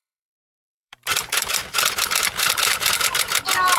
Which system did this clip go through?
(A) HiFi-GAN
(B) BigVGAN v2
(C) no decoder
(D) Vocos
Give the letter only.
B